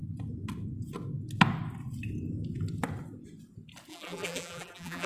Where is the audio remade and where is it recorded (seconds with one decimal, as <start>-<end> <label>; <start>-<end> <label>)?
0.0-3.9 recorded; 3.9-5.1 remade